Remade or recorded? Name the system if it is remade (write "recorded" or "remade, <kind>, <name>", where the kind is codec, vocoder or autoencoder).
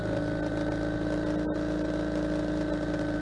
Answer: recorded